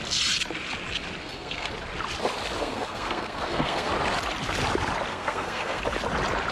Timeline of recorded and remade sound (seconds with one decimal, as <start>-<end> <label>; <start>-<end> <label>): 0.0-1.2 recorded; 1.2-1.7 remade; 1.7-2.6 recorded; 2.6-3.9 remade; 3.9-5.1 recorded; 5.1-5.8 remade; 5.8-6.5 recorded

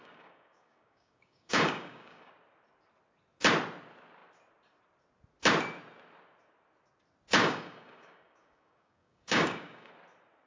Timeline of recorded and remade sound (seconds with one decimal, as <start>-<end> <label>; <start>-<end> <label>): 0.0-2.3 remade; 2.3-7.4 recorded; 7.4-9.9 remade; 9.9-10.5 recorded